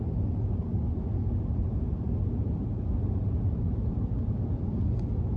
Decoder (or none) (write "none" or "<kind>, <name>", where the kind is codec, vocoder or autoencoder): none